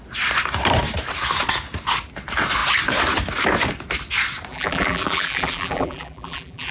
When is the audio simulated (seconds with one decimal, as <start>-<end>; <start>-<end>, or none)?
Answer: 4.5-6.7